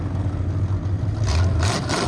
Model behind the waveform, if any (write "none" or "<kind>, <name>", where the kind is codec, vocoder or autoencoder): none